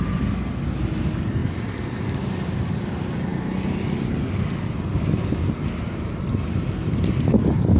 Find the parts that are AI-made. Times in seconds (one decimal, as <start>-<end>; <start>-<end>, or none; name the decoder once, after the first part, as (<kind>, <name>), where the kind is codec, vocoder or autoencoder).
none